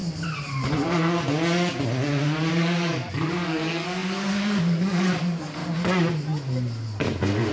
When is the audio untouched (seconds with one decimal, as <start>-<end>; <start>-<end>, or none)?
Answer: 0.0-2.5; 5.6-7.5